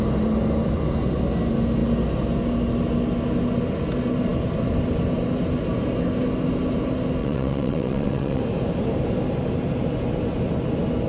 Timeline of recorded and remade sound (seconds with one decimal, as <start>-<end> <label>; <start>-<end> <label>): 0.0-7.2 recorded; 7.2-8.4 remade; 8.4-11.1 recorded